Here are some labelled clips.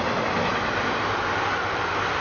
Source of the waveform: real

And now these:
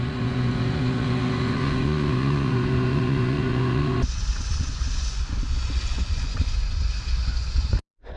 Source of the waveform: fake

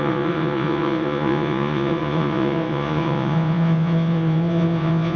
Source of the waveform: fake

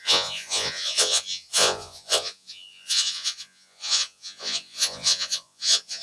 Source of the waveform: fake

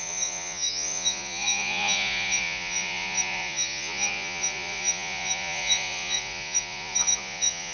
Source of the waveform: fake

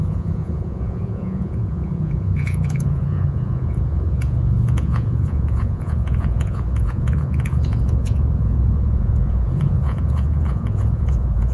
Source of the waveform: fake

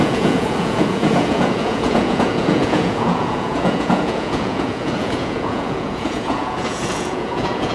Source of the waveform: fake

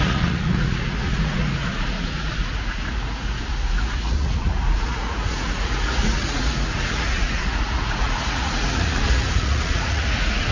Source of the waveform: fake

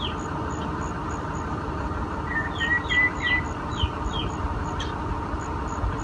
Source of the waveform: real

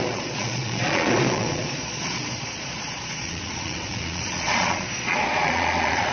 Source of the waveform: fake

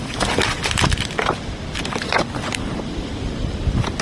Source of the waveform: real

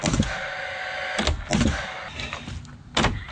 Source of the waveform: real